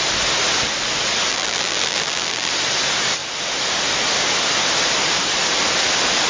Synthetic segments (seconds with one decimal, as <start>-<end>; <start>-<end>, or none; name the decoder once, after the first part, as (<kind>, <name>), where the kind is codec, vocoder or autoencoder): 1.3-2.5 (vocoder, BigVGAN v2)